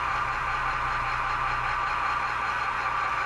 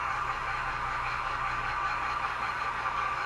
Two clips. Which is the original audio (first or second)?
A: first